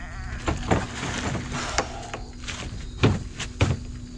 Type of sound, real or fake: real